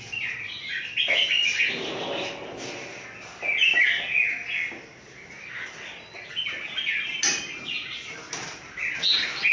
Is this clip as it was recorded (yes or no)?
yes